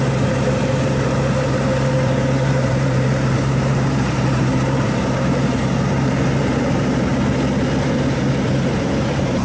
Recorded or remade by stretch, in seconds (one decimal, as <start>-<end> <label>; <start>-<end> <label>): 0.0-7.1 remade; 7.1-7.8 recorded; 7.8-9.4 remade